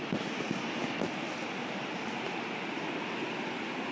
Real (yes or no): yes